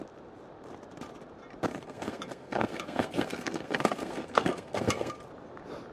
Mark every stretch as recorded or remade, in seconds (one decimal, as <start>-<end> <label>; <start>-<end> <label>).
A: 0.0-1.7 recorded; 1.7-5.2 remade; 5.2-5.9 recorded